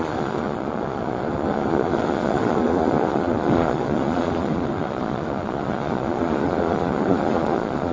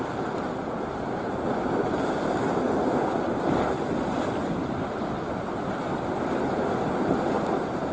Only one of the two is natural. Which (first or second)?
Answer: second